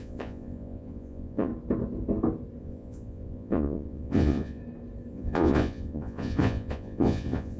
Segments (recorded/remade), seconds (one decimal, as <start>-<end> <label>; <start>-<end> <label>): 0.0-1.5 remade; 1.5-2.6 recorded; 2.6-4.6 remade; 4.6-5.1 recorded; 5.1-7.6 remade